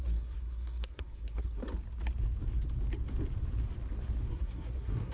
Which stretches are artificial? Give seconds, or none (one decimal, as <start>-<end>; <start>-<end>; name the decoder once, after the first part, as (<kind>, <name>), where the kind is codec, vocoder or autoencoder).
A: 0.0-1.6 (codec, SNAC); 4.3-5.1